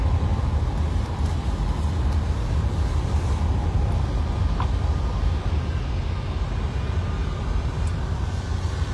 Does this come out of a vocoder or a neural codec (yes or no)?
no